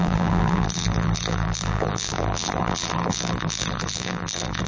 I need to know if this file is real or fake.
fake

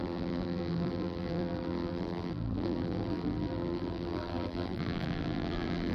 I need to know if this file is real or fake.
fake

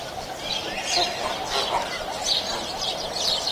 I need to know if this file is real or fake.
real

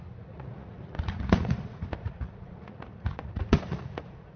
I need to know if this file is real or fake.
fake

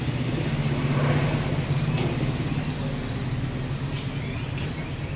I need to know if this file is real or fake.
real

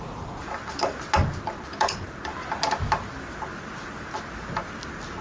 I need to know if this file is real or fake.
real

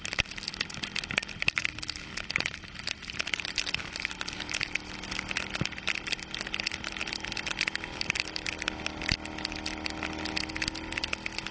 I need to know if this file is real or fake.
real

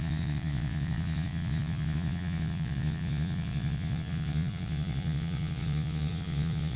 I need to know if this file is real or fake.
fake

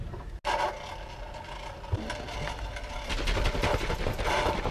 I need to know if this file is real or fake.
real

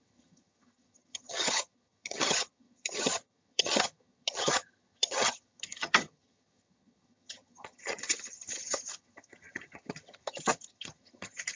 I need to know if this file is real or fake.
fake